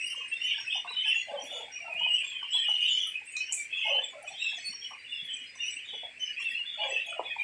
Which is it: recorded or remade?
recorded